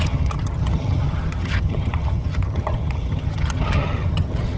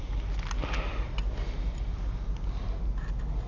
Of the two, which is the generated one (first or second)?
first